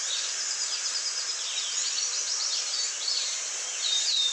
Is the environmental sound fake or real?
fake